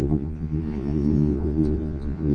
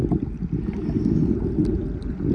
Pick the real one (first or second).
second